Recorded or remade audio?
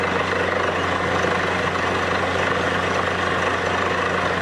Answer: recorded